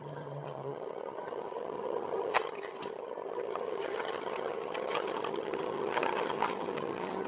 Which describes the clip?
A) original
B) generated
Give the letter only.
B